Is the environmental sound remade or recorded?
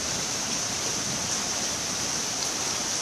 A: remade